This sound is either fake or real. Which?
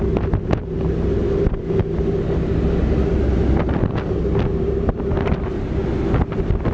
real